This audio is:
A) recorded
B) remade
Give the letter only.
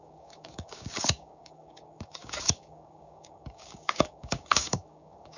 B